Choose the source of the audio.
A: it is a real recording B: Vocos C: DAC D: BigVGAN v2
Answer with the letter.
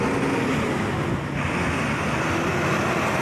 A